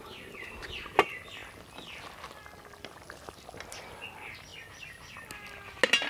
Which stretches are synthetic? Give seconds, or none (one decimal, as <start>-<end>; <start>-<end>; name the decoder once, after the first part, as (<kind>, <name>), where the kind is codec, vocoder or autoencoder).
none